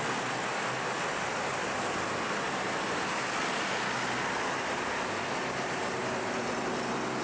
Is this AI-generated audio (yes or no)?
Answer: no